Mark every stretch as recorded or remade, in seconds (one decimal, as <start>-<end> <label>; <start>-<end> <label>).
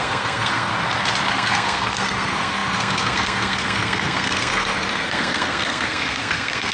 0.0-0.7 remade; 0.7-1.3 recorded; 1.3-6.7 remade